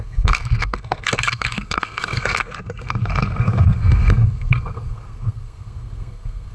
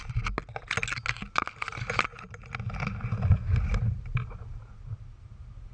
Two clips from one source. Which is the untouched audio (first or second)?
second